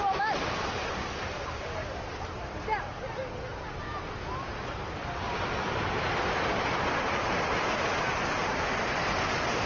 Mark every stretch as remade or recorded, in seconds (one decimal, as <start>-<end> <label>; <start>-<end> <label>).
0.0-3.2 remade; 3.2-8.3 recorded; 8.3-9.7 remade